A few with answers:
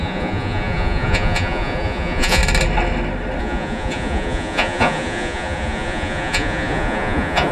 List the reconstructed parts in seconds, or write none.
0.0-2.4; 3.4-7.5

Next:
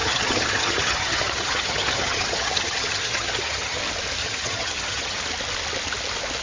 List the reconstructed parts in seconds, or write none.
0.0-3.8; 4.2-5.2

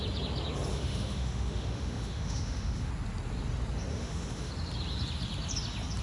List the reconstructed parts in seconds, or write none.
0.7-2.9; 3.9-4.5